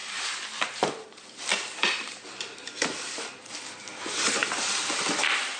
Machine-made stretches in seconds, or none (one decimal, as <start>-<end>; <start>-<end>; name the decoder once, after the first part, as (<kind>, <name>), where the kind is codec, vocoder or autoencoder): 0.0-2.8 (vocoder, BigVGAN v2); 4.4-5.6